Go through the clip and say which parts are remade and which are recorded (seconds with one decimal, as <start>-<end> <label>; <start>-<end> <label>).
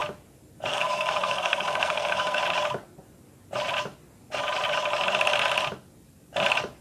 0.0-0.7 recorded; 0.7-2.4 remade; 2.4-6.8 recorded